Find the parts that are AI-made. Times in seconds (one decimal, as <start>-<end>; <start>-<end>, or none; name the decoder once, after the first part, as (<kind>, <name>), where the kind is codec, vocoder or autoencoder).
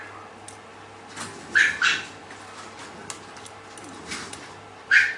none